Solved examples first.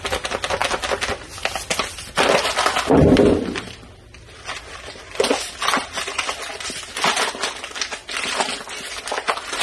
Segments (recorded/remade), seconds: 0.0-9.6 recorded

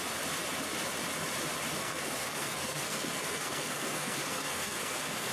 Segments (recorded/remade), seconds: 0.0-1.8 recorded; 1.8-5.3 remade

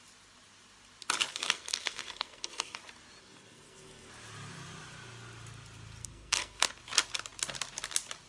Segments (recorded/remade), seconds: 0.0-1.3 recorded; 1.3-2.8 remade; 2.8-3.2 recorded; 3.2-4.1 remade; 4.1-6.0 recorded; 6.0-6.7 remade; 6.7-8.3 recorded

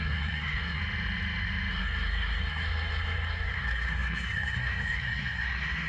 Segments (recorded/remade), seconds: 0.0-0.8 remade; 0.8-1.7 recorded; 1.7-5.9 remade

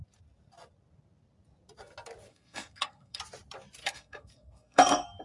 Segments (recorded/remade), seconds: 0.0-2.3 recorded; 2.3-3.2 remade; 3.2-3.8 recorded; 3.8-5.2 remade

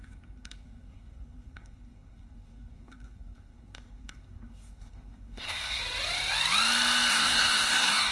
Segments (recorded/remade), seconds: 0.0-5.8 remade; 5.8-7.1 recorded; 7.1-8.1 remade